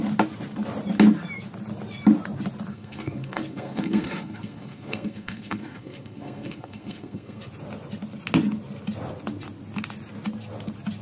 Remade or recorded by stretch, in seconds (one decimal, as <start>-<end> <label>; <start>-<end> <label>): 0.0-2.7 recorded; 2.7-7.4 remade; 7.4-11.0 recorded